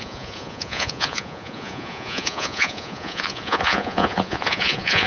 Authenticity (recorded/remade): remade